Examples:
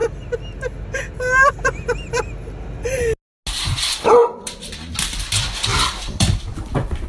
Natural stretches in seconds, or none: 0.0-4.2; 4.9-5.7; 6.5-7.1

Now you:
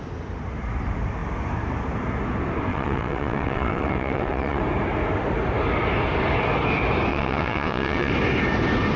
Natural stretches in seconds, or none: 0.0-2.7; 4.6-7.1; 8.1-9.0

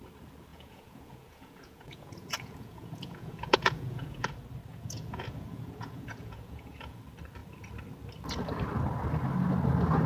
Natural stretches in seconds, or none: 0.0-0.5; 4.3-4.7; 7.0-10.1